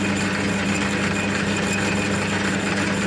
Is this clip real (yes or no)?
yes